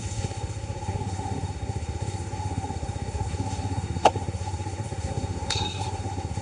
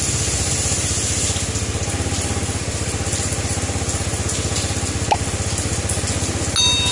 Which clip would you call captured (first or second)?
second